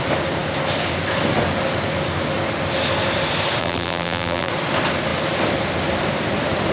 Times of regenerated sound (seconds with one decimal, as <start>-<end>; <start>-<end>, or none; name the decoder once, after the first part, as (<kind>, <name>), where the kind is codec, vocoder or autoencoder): 3.6-4.5 (vocoder, BigVGAN v2)